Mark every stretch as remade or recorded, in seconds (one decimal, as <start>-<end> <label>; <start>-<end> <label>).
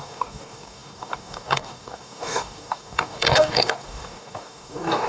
0.0-5.1 remade